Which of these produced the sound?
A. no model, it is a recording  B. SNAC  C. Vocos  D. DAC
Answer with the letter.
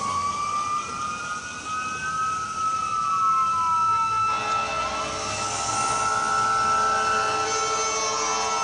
A